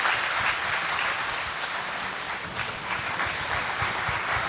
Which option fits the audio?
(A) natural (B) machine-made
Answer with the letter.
A